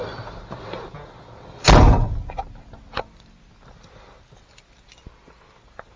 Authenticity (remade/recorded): recorded